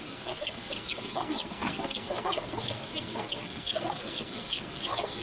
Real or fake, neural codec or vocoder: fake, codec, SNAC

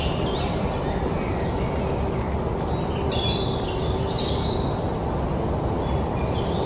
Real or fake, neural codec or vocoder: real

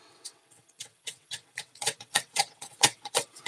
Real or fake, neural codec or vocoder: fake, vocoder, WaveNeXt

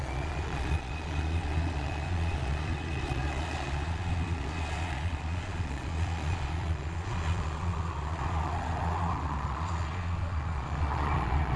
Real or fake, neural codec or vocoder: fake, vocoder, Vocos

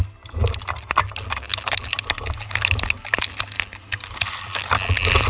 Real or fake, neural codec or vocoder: real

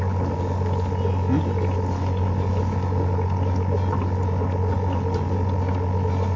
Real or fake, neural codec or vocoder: real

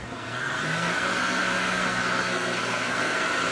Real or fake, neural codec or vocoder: fake, codec, SNAC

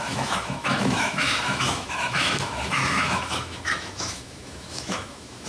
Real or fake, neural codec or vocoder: fake, autoencoder, DAC-VAE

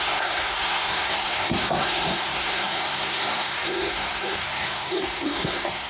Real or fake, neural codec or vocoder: fake, codec, SNAC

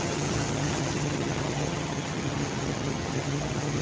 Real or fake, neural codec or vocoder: fake, vocoder, HiFi-GAN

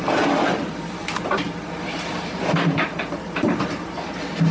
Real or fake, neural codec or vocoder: fake, vocoder, BigVGAN v2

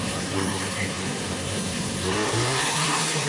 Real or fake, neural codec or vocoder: fake, codec, SNAC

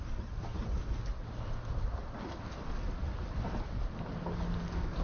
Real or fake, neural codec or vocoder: real